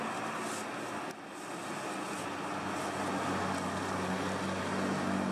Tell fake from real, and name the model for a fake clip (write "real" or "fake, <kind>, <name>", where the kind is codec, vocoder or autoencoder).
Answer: real